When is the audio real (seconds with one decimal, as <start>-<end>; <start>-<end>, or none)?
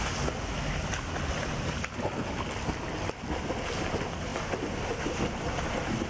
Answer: 0.0-6.1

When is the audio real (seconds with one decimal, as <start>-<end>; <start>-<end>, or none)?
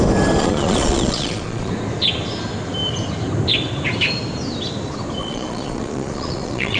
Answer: 0.0-0.4; 1.7-5.2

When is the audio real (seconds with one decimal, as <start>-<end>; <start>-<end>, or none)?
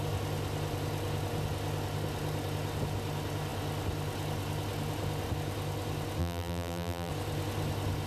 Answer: 0.0-6.2; 7.1-8.1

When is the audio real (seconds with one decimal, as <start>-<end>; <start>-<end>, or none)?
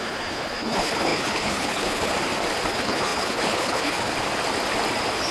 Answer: 2.1-2.7; 4.1-5.3